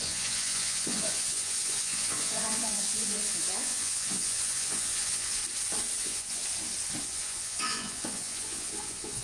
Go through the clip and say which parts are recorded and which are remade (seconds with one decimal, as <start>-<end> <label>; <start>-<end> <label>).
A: 0.0-5.4 remade; 5.4-6.0 recorded; 6.0-6.4 remade; 6.4-7.0 recorded; 7.0-9.2 remade